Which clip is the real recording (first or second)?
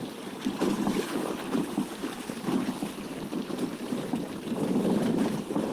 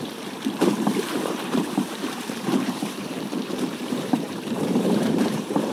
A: first